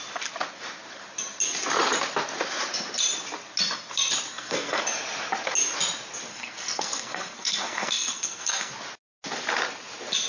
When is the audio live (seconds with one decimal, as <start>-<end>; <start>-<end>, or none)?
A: 0.0-4.3; 4.8-6.3; 8.7-10.3